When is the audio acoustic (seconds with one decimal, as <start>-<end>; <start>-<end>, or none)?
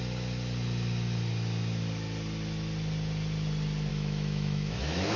0.0-3.9